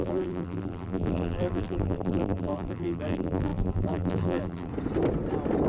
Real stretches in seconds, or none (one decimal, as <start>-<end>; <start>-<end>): 4.7-5.7